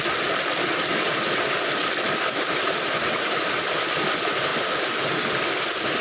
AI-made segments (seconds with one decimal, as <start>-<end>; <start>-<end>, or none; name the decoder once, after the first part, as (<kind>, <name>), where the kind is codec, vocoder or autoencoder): none